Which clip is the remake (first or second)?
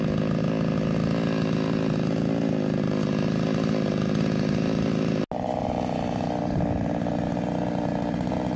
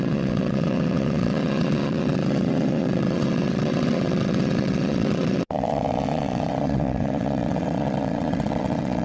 second